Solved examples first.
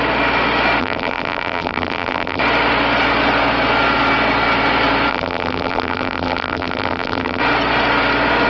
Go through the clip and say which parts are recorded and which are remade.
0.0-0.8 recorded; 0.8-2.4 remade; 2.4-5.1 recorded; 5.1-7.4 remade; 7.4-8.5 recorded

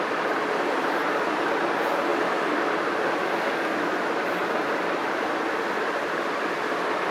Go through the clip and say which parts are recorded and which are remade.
0.0-4.4 recorded; 4.4-6.2 remade; 6.2-7.1 recorded

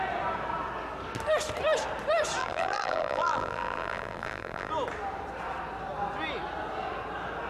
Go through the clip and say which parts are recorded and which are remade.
0.0-2.4 recorded; 2.4-4.7 remade; 4.7-7.5 recorded

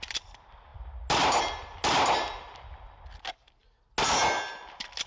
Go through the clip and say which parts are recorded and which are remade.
0.0-5.1 recorded

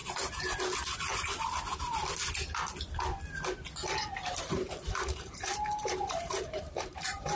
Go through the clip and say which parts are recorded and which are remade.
0.0-4.4 recorded; 4.4-7.4 remade

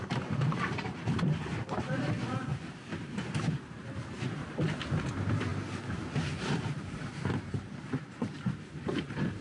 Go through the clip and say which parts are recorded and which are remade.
0.0-9.4 remade